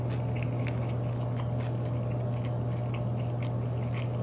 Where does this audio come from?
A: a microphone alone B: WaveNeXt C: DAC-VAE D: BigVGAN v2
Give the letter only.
A